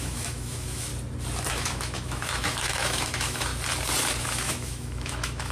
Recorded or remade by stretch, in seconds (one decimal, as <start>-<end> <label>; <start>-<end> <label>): 0.0-0.9 remade; 0.9-1.5 recorded; 1.5-3.5 remade; 3.5-4.2 recorded; 4.2-5.5 remade